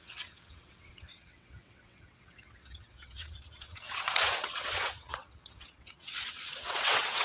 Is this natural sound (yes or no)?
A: no